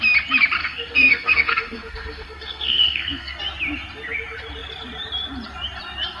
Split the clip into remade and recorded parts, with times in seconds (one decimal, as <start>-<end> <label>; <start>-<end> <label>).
0.0-0.6 recorded; 0.6-3.4 remade; 3.4-6.2 recorded